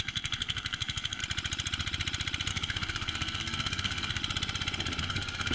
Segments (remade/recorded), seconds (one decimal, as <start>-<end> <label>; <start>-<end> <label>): 0.0-1.2 remade; 1.2-2.5 recorded; 2.5-4.2 remade; 4.2-5.0 recorded; 5.0-5.5 remade